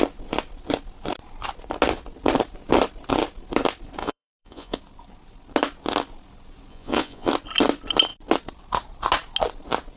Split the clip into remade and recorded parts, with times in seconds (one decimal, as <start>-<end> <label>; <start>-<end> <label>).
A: 0.0-4.0 recorded; 4.0-4.8 remade; 4.8-6.7 recorded; 6.7-7.3 remade; 7.3-10.0 recorded